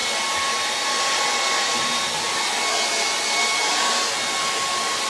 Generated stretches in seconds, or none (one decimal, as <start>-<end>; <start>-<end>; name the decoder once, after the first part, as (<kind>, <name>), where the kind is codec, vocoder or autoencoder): none